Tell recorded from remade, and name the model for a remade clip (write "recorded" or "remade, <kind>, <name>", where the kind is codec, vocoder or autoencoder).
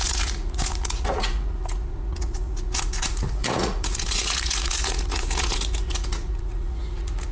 remade, vocoder, Vocos